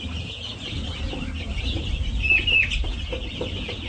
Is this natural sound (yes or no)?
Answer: yes